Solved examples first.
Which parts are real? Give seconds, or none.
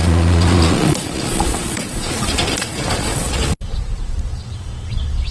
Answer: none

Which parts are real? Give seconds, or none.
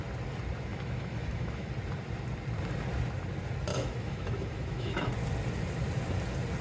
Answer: 0.0-0.7; 1.7-3.7; 5.1-6.6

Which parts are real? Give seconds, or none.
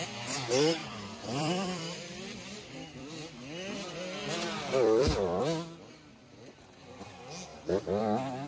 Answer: 0.0-0.8; 3.0-4.2; 5.4-7.5; 8.0-8.5